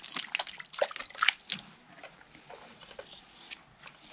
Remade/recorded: recorded